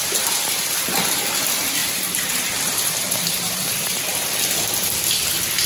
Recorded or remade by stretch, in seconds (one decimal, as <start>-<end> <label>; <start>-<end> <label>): 0.0-1.8 recorded; 1.8-4.0 remade; 4.0-5.7 recorded